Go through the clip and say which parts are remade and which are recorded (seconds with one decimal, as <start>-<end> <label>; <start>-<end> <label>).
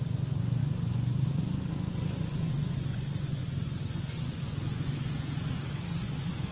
0.0-6.5 remade